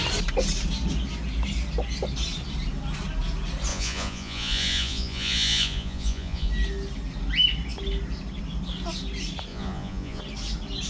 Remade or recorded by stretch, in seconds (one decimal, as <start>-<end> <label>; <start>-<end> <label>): 0.0-3.7 recorded; 3.7-6.5 remade; 6.5-9.5 recorded; 9.5-10.2 remade; 10.2-10.9 recorded